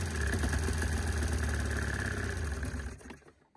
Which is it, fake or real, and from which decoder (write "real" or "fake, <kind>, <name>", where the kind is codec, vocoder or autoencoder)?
real